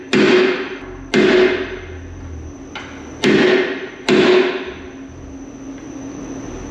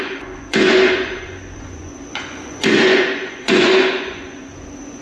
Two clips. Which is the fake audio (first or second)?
second